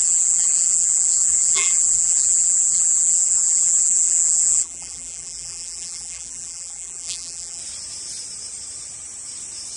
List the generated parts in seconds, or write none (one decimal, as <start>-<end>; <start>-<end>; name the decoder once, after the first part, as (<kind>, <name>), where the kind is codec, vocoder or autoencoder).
0.0-7.6 (vocoder, BigVGAN v2)